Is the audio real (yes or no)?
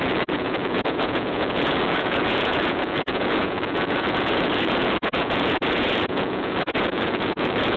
no